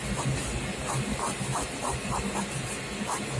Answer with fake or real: real